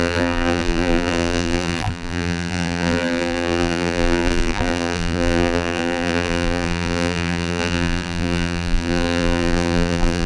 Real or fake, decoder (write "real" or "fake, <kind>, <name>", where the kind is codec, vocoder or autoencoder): fake, vocoder, BigVGAN v2